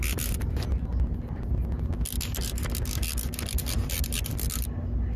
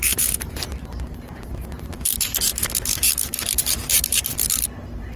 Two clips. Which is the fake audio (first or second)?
second